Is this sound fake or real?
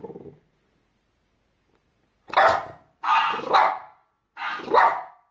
real